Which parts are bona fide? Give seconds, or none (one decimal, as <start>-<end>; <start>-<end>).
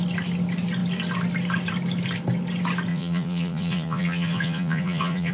0.0-2.9